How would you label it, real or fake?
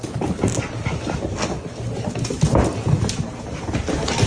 real